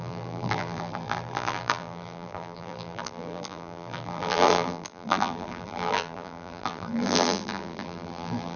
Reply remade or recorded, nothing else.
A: remade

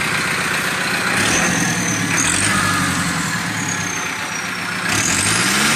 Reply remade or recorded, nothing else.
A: recorded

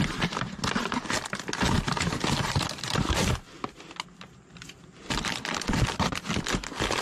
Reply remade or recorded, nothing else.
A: recorded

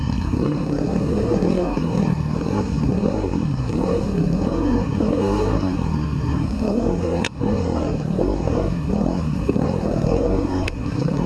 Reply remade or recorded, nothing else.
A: remade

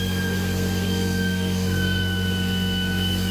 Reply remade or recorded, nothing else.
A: remade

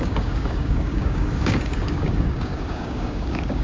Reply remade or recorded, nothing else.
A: remade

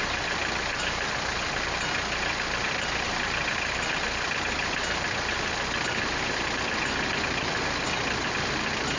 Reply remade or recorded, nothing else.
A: recorded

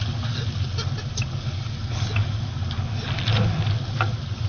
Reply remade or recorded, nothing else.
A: recorded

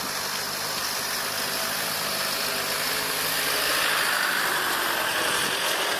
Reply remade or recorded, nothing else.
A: recorded